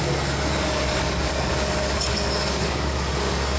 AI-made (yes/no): yes